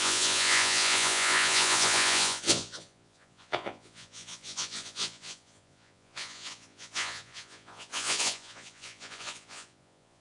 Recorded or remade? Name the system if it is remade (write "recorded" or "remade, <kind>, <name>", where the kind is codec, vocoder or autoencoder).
remade, vocoder, Vocos